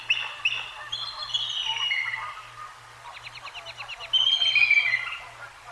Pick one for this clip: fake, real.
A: real